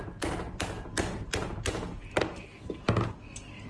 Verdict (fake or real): real